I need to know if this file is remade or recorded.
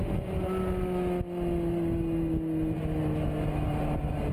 recorded